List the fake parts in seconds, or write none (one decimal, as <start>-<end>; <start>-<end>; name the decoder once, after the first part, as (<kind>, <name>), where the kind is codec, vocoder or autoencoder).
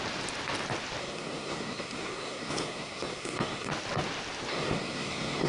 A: 1.0-3.7 (codec, SNAC); 4.5-5.5